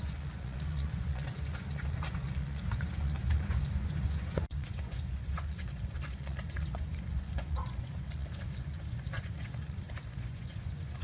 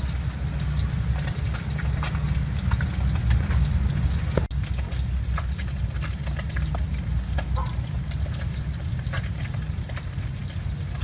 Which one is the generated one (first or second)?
first